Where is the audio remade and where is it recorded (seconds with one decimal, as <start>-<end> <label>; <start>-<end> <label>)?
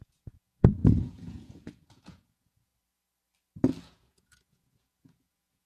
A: 0.0-2.7 remade; 2.7-3.8 recorded; 3.8-5.7 remade